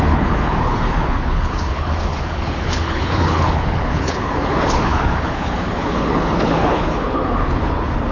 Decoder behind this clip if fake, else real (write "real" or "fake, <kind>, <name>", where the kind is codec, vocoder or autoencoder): fake, codec, HILCodec